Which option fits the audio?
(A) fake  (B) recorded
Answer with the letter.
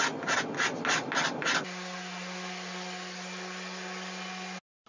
B